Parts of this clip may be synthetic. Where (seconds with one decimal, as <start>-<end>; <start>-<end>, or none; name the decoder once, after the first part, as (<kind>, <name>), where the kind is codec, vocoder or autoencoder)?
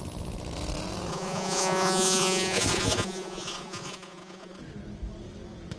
1.1-4.6 (vocoder, Vocos)